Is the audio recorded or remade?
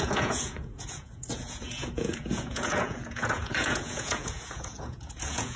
remade